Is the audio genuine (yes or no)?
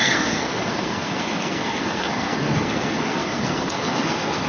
no